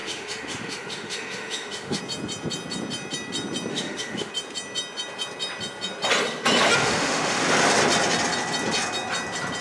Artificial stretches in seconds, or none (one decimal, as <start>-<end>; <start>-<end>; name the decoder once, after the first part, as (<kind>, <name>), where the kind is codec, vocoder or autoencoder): 0.0-2.0 (autoencoder, DAC-VAE); 3.7-4.3; 6.8-7.4